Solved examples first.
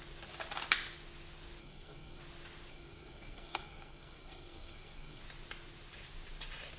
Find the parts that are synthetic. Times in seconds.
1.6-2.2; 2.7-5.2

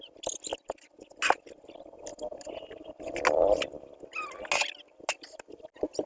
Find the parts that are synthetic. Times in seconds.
none

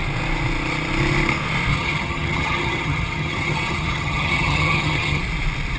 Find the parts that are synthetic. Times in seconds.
1.7-5.2

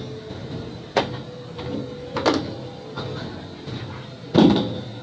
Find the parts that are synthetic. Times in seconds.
0.4-1.0

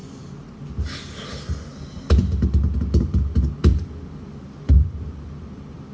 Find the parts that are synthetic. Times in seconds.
3.5-5.9